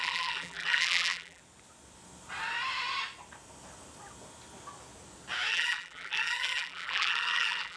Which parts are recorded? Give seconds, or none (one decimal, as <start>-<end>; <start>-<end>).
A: 1.4-5.5